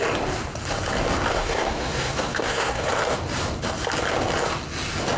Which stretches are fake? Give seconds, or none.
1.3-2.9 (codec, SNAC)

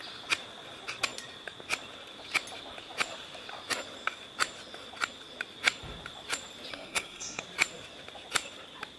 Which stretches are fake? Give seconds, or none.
6.7-7.4 (codec, SNAC)